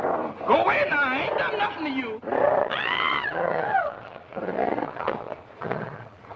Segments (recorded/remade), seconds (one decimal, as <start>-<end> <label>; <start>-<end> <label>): 0.0-2.6 recorded; 2.6-6.4 remade